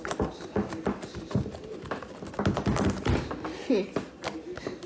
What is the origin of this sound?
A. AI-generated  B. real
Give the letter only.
B